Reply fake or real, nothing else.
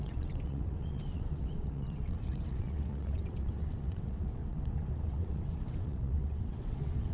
fake